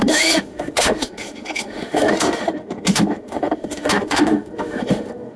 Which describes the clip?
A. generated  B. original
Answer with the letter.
A